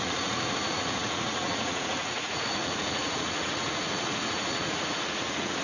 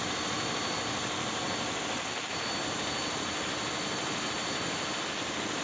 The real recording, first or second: second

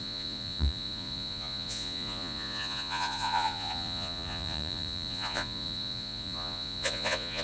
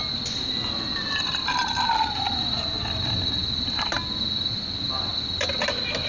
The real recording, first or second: second